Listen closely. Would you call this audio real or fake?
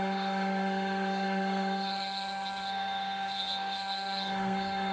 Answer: fake